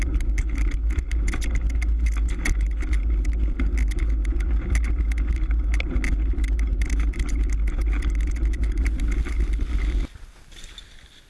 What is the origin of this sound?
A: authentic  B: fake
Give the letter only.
A